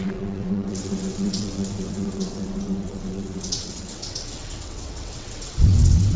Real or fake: fake